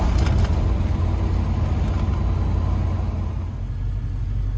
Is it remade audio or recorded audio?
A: recorded